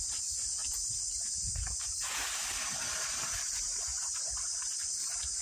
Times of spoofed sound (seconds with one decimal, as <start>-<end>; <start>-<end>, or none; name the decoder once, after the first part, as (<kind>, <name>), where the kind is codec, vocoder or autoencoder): 0.6-2.5 (vocoder, BigVGAN v2)